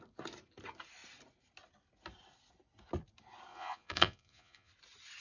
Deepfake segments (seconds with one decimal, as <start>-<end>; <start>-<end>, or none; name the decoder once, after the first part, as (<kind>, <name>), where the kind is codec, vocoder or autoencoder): 3.5-4.7 (vocoder, Vocos)